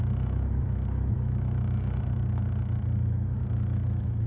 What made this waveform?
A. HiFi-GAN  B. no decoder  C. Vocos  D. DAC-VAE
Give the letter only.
D